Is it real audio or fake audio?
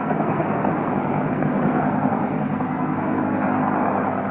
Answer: fake